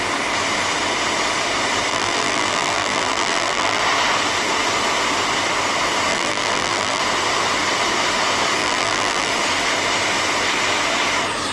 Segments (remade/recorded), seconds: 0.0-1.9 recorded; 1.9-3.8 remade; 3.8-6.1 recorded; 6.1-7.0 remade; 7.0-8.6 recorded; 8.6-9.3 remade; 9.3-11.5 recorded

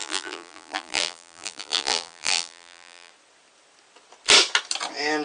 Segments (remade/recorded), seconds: 0.0-3.1 remade; 3.1-5.2 recorded

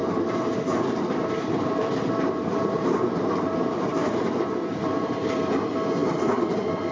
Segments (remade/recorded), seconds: 0.0-0.6 recorded; 0.6-6.9 remade

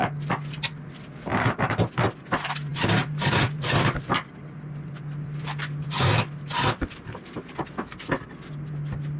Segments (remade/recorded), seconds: 0.0-1.3 recorded; 1.3-1.9 remade; 1.9-2.7 recorded; 2.7-4.9 remade; 4.9-6.8 recorded; 6.8-7.5 remade; 7.5-9.2 recorded